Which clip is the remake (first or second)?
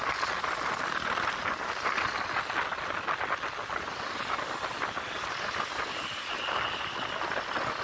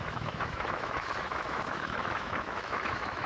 second